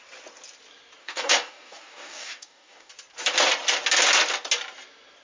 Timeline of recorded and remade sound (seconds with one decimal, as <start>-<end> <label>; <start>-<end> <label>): 0.0-1.0 recorded; 1.0-2.9 remade; 2.9-5.2 recorded